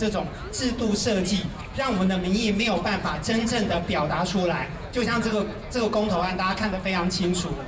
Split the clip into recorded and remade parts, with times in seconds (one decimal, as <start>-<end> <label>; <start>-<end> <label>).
0.0-7.7 remade